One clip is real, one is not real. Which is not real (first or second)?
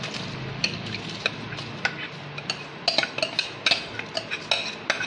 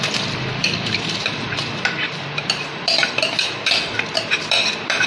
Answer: second